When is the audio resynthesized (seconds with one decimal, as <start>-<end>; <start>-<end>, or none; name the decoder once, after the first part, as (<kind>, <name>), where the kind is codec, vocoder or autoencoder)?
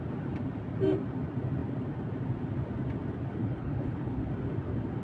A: 3.4-4.2 (codec, HILCodec)